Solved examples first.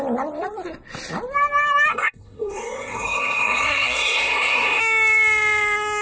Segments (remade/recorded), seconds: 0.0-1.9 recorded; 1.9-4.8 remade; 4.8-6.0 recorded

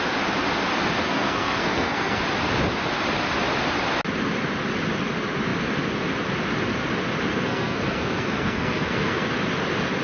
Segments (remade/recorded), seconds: 0.0-1.0 recorded; 1.0-2.2 remade; 2.2-7.3 recorded; 7.3-9.3 remade; 9.3-10.0 recorded

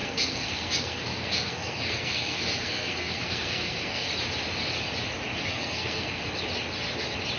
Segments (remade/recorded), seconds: 0.0-4.1 remade; 4.1-5.5 recorded; 5.5-6.2 remade; 6.2-7.4 recorded

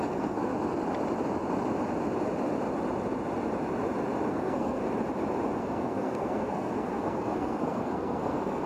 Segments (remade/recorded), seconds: 0.0-0.5 remade; 0.5-4.3 recorded; 4.3-4.8 remade; 4.8-5.6 recorded; 5.6-8.7 remade